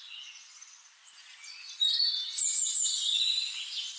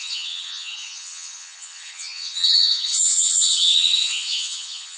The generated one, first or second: second